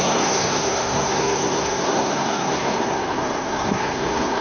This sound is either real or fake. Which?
fake